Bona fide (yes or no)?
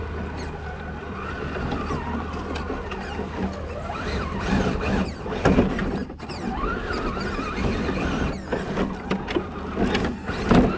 yes